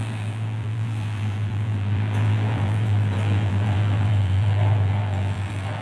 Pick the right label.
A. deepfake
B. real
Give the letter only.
A